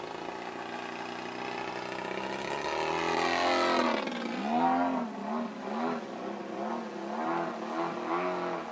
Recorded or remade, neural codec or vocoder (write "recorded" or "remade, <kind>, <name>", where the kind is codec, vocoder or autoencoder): recorded